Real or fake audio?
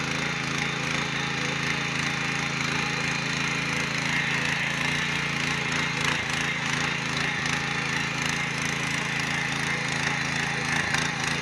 real